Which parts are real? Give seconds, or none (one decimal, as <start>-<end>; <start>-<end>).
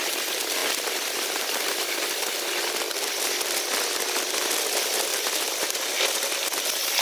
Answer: 0.0-5.1; 6.0-7.0